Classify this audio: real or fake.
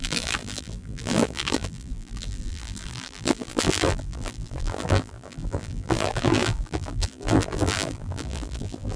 fake